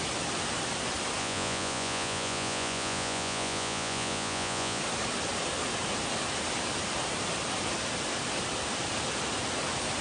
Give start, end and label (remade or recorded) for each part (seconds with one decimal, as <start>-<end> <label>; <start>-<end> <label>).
0.0-1.2 recorded; 1.2-4.8 remade; 4.8-10.0 recorded